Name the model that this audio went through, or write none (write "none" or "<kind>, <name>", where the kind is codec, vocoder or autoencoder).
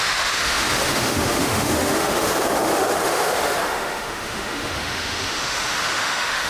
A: autoencoder, DAC-VAE